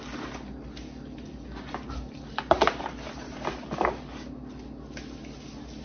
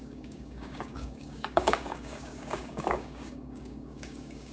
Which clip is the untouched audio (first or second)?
first